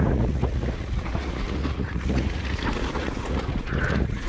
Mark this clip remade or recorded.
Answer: remade